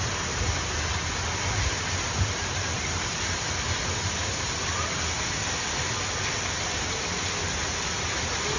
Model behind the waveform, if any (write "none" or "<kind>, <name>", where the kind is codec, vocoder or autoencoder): none